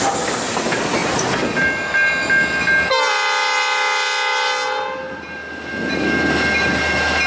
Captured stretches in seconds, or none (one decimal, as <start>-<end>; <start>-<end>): 0.0-7.3